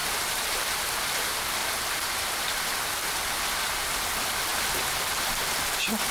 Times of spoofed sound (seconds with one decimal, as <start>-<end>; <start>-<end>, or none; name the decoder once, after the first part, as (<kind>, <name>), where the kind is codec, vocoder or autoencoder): 0.0-0.9 (vocoder, BigVGAN v2); 1.6-2.4

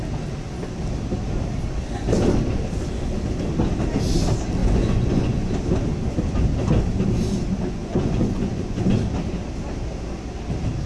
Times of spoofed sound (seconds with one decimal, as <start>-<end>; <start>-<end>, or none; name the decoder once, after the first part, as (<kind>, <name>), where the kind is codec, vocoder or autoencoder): 4.6-5.5 (vocoder, Vocos); 7.8-8.8

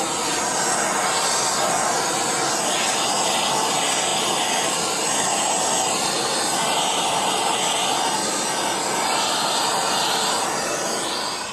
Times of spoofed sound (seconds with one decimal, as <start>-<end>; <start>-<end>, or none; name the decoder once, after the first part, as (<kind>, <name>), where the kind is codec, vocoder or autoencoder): none

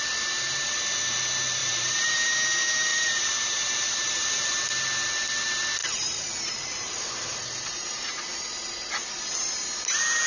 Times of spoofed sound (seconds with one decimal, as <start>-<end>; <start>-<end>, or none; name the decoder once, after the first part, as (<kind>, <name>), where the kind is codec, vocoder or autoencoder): 1.6-2.3 (vocoder, BigVGAN v2); 2.9-4.5; 5.8-8.4